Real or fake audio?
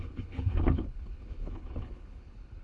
fake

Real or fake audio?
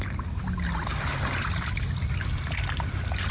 real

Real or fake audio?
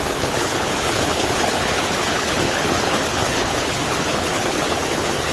fake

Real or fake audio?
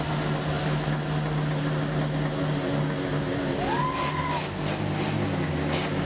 real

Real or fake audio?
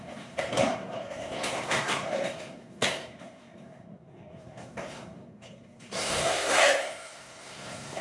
fake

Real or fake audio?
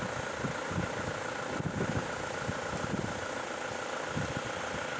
real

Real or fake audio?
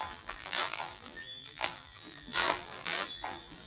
fake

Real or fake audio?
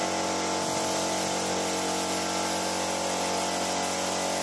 real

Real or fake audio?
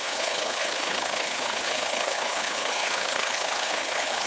fake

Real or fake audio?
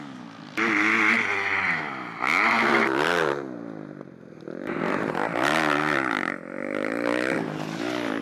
real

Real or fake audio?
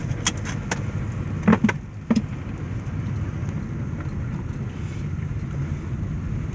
real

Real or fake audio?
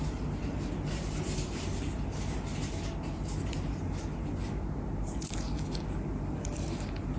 real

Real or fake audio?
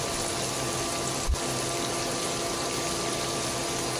real